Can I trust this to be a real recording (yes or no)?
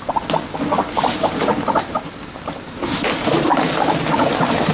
yes